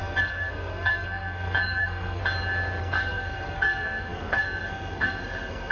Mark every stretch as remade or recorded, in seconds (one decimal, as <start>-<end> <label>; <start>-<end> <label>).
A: 0.0-2.2 remade; 2.2-2.8 recorded; 2.8-5.7 remade